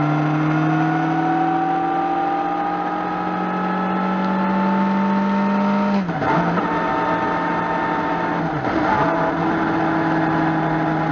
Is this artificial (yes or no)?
no